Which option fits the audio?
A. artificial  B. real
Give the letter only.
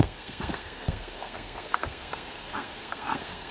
A